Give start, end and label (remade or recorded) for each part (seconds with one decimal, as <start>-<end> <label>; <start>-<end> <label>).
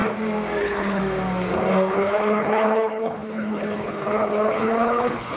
0.0-0.6 recorded; 0.6-1.0 remade; 1.0-1.9 recorded; 1.9-5.4 remade